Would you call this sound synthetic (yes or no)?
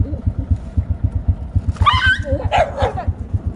no